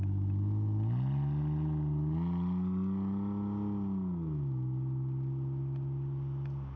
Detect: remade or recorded recorded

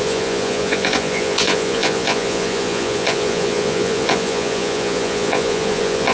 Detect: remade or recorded remade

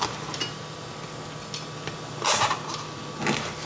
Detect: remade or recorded recorded